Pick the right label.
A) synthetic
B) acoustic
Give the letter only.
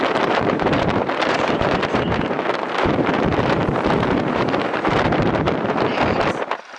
A